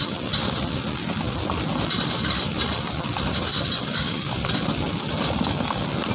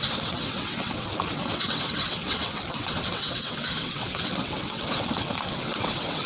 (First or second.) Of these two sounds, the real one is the first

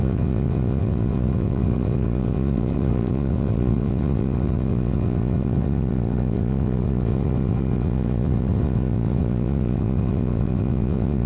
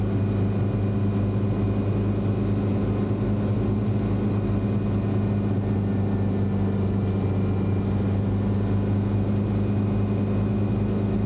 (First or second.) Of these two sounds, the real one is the second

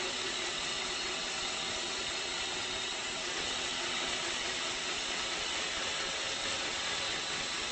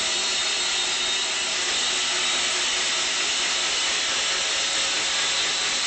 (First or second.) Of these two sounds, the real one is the second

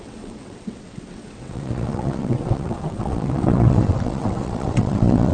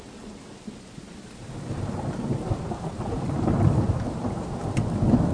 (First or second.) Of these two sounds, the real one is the second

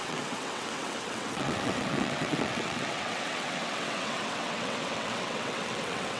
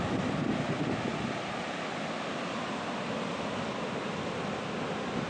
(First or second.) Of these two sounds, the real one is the second